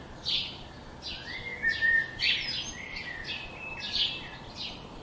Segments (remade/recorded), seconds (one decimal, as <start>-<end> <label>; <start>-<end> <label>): 0.0-5.0 recorded